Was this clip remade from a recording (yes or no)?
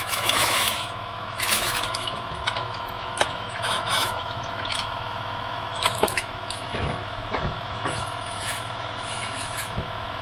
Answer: yes